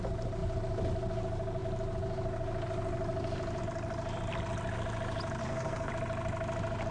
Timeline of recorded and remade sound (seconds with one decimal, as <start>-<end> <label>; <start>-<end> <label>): 0.0-5.4 recorded; 5.4-5.9 remade; 5.9-6.9 recorded

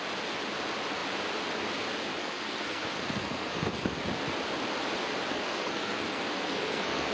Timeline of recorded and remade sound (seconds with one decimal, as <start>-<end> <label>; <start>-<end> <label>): 0.0-2.2 recorded; 2.2-4.0 remade; 4.0-5.3 recorded; 5.3-7.1 remade

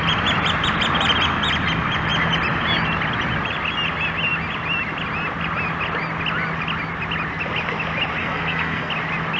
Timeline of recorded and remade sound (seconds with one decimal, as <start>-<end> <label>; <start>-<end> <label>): 0.0-8.2 recorded; 8.2-8.9 remade; 8.9-9.4 recorded

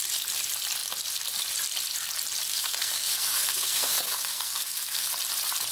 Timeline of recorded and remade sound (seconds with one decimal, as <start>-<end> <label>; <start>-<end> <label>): 0.0-2.5 recorded; 2.5-5.1 remade; 5.1-5.7 recorded

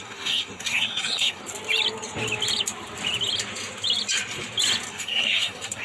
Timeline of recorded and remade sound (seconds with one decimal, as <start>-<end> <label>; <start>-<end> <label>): 0.0-1.4 remade; 1.4-4.9 recorded; 4.9-5.8 remade

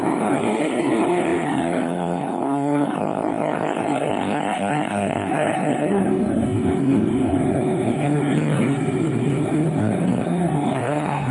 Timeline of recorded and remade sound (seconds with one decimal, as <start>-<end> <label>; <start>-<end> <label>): 0.0-11.3 remade

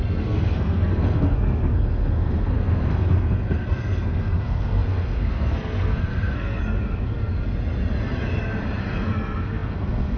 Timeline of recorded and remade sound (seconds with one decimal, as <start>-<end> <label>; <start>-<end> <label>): 0.0-6.6 remade; 6.6-8.8 recorded; 8.8-10.2 remade